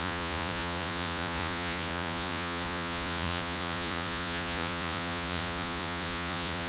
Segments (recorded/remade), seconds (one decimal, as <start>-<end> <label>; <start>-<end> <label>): 0.0-6.7 remade